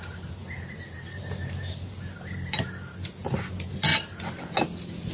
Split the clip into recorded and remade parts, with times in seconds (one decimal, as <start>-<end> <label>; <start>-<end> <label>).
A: 0.0-0.4 recorded; 0.4-3.5 remade; 3.5-5.1 recorded